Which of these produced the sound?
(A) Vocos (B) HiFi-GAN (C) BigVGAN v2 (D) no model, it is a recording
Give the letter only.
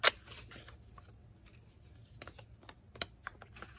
D